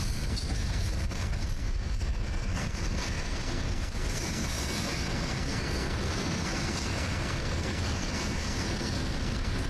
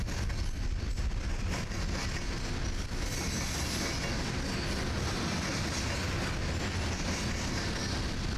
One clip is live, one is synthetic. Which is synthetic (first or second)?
first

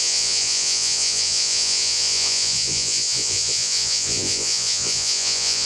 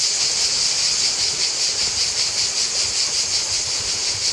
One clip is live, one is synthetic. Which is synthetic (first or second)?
first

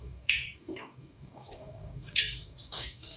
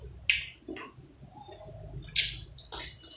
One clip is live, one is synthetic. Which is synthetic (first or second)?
first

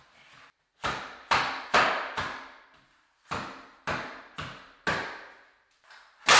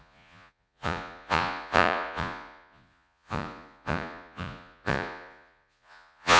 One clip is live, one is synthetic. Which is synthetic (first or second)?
second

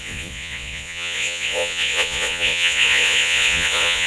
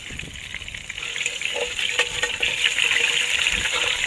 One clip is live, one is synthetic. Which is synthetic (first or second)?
first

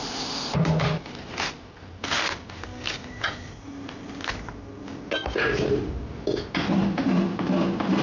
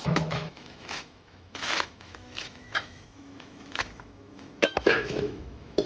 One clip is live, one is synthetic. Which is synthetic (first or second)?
second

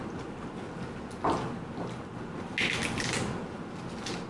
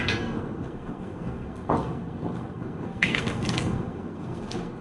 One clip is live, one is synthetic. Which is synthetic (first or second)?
second